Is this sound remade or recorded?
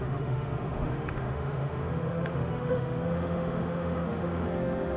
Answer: remade